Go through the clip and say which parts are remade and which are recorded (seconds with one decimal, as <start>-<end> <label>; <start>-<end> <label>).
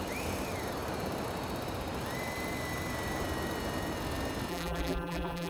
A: 0.0-4.5 recorded; 4.5-5.5 remade